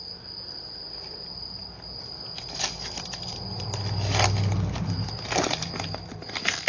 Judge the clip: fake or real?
real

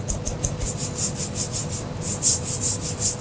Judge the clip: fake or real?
real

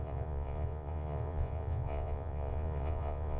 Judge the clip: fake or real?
fake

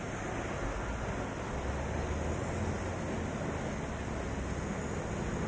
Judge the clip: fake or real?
real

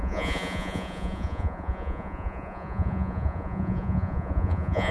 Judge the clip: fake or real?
fake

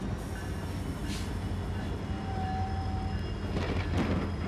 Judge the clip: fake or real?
real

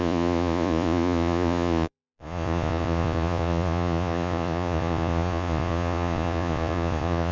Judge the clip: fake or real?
fake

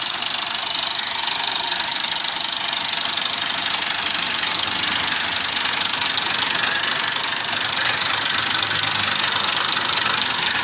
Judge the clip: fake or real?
real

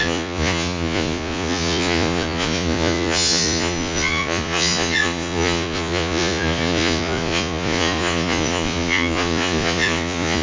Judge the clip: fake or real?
fake